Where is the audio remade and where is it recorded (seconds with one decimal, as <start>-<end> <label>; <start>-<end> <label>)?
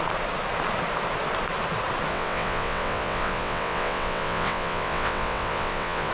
0.0-2.1 recorded; 2.1-6.1 remade